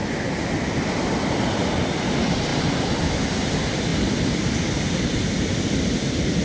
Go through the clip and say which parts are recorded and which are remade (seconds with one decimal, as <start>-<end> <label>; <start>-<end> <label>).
0.0-6.4 recorded